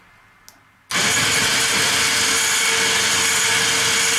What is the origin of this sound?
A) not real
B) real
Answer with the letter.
B